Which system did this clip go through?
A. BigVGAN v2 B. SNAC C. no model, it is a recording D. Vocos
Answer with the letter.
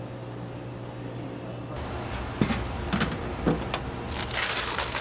C